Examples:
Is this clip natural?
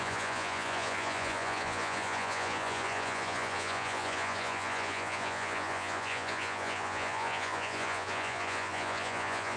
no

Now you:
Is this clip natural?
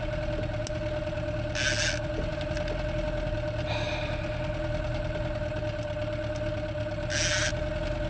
yes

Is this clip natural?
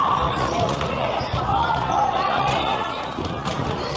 no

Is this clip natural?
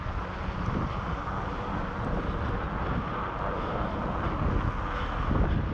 yes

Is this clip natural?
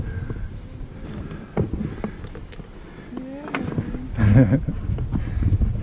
yes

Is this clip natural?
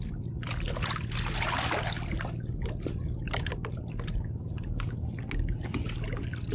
yes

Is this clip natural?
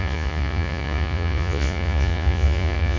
no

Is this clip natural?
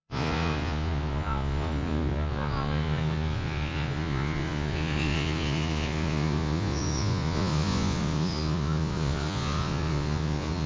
no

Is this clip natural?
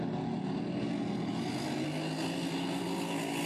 yes